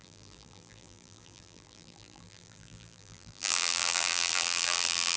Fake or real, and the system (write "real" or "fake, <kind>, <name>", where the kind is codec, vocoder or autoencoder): fake, vocoder, BigVGAN v2